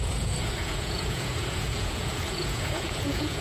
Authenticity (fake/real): fake